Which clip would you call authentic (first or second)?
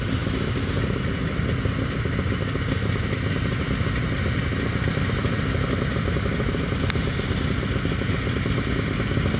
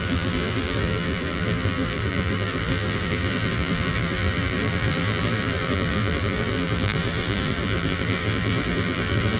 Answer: first